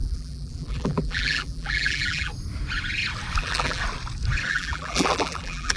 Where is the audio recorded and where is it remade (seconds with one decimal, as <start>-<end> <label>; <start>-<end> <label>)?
0.0-2.3 remade; 2.3-3.4 recorded; 3.4-3.8 remade; 3.8-4.5 recorded; 4.5-5.8 remade